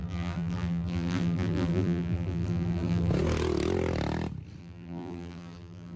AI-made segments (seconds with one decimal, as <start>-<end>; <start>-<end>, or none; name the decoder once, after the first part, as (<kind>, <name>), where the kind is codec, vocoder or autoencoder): 0.0-3.1 (vocoder, BigVGAN v2); 4.6-6.0